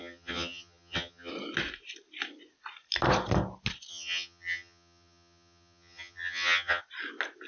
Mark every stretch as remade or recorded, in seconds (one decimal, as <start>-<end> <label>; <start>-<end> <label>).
0.0-1.3 remade; 1.3-3.9 recorded; 3.9-6.8 remade; 6.8-7.5 recorded